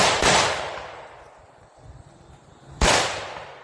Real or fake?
fake